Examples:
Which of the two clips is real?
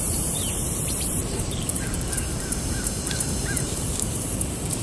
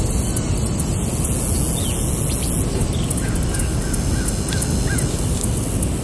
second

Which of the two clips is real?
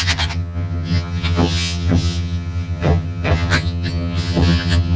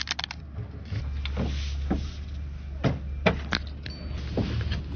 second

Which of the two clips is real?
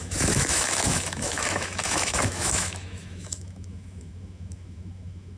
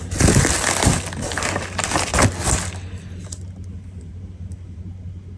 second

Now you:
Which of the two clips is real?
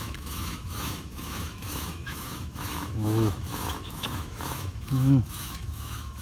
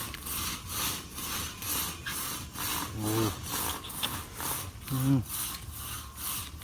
second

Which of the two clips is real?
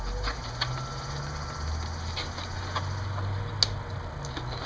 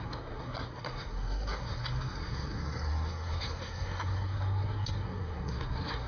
first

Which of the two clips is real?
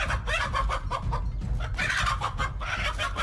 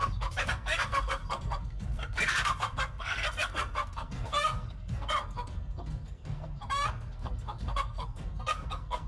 first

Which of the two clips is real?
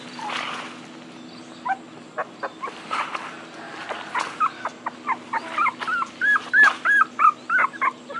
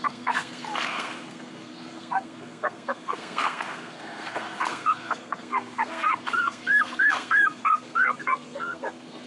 first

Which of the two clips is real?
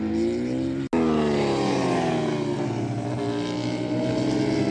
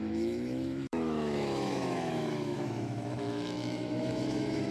first